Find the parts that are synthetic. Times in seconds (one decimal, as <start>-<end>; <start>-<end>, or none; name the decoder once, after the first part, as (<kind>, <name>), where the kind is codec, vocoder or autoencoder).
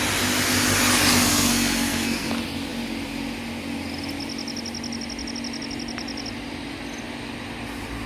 1.3-2.3 (codec, SNAC)